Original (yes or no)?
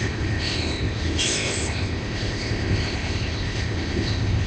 no